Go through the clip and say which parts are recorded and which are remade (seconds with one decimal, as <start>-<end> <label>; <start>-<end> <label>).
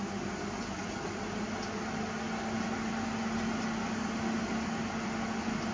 0.0-5.7 recorded